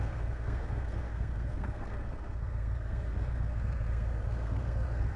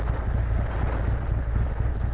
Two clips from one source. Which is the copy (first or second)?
first